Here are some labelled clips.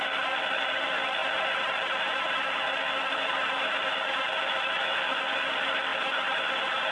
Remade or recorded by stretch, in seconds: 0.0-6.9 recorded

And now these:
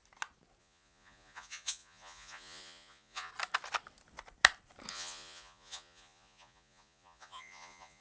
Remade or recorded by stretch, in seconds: 0.0-0.6 recorded; 0.6-3.3 remade; 3.3-4.9 recorded; 4.9-8.0 remade

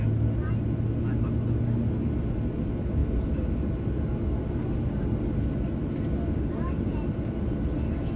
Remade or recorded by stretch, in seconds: 0.0-8.2 recorded

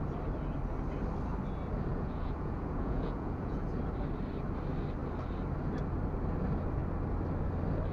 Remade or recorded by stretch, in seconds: 0.0-1.9 recorded; 1.9-3.8 remade; 3.8-7.9 recorded

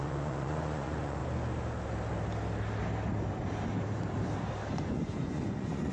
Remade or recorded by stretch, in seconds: 0.0-1.2 remade; 1.2-4.7 recorded; 4.7-5.9 remade

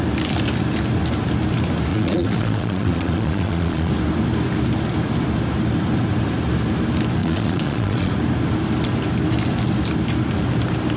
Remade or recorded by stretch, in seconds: 0.0-1.9 recorded; 1.9-3.9 remade; 3.9-7.2 recorded; 7.2-8.1 remade; 8.1-11.0 recorded

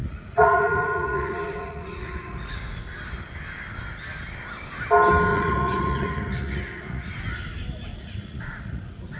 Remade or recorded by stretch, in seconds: 0.0-2.8 remade; 2.8-5.3 recorded; 5.3-7.1 remade; 7.1-7.9 recorded; 7.9-9.2 remade

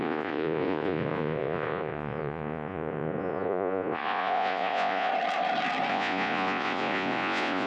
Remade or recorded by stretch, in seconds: 0.0-5.1 remade; 5.1-5.9 recorded; 5.9-7.7 remade